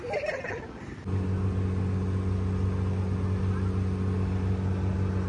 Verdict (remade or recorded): recorded